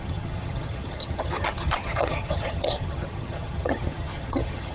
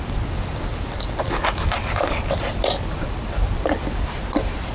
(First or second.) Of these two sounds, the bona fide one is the second